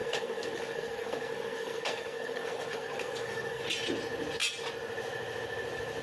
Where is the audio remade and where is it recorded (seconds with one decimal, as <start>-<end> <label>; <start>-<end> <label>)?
0.0-3.6 remade; 3.6-6.0 recorded